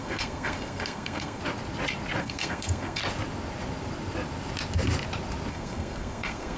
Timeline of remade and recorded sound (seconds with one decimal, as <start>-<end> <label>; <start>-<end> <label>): 0.0-1.4 remade; 1.4-2.2 recorded; 2.2-3.0 remade; 3.0-5.5 recorded; 5.5-6.6 remade